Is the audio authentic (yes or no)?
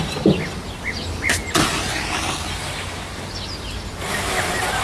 yes